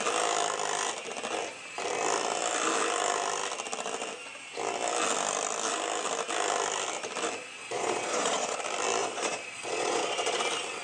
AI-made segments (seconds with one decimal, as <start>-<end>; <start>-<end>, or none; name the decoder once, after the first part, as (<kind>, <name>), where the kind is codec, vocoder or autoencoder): 7.6-8.6 (vocoder, Vocos); 9.0-10.4